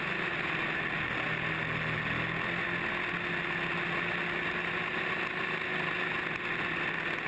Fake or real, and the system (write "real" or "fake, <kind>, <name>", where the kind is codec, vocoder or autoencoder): real